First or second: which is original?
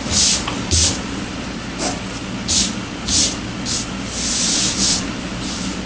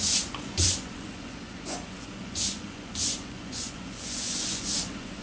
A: first